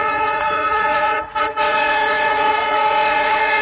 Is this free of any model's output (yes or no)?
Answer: no